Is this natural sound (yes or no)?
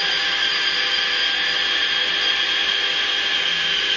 yes